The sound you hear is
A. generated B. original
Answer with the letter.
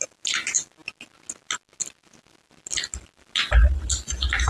B